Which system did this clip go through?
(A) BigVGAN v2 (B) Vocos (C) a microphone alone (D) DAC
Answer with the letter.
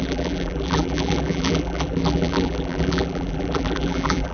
A